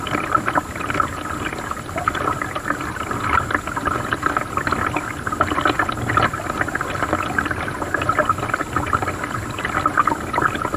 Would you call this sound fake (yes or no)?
no